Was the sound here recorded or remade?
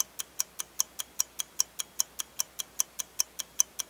recorded